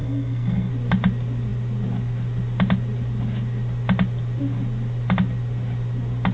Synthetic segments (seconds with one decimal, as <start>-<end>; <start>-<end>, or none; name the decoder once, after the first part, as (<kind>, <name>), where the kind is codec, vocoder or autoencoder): 0.0-0.7 (codec, SNAC)